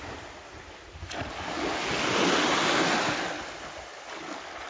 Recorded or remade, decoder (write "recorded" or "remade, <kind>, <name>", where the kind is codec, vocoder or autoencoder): recorded